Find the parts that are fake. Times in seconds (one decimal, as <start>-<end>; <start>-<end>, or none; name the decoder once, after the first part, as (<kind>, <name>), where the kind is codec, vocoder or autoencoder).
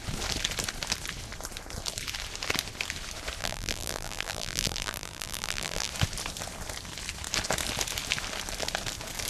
3.4-5.9 (vocoder, BigVGAN v2)